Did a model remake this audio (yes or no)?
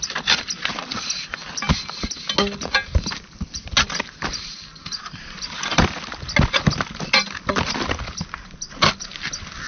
no